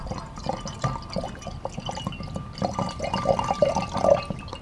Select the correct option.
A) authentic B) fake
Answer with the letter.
A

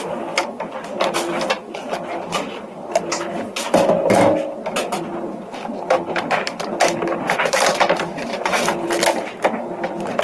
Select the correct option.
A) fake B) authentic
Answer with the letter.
B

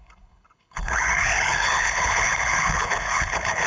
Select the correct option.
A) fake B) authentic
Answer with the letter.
A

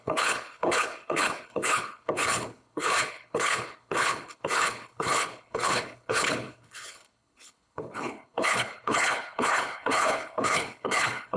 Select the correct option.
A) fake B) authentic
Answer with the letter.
A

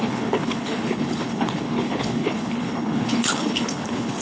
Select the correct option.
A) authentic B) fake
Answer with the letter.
B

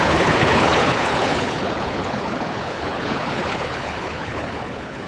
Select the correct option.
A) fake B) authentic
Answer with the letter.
A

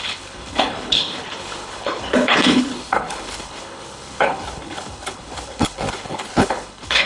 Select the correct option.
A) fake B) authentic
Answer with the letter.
A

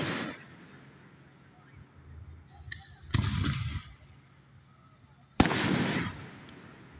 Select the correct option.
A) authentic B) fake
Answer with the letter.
A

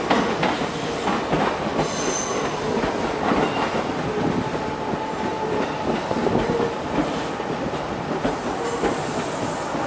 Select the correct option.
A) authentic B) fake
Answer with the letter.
A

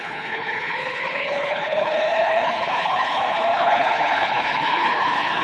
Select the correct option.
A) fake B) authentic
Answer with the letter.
A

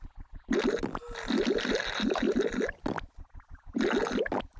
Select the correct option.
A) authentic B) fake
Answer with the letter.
A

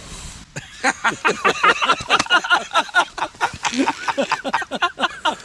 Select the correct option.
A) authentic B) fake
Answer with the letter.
A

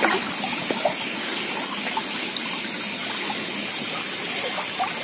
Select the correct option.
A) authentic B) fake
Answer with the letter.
A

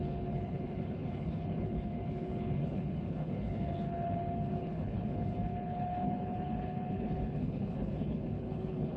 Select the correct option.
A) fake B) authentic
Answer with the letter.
A